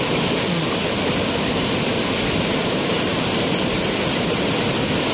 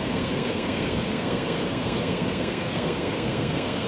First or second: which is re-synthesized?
second